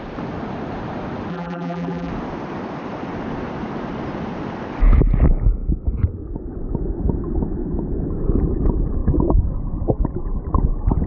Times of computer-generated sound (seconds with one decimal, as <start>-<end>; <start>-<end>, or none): 1.3-2.1